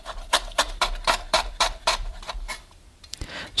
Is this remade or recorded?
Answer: remade